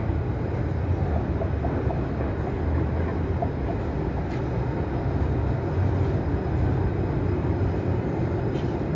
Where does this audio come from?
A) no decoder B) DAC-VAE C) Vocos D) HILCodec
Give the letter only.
A